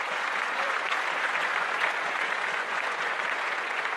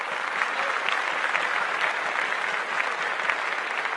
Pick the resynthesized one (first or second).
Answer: first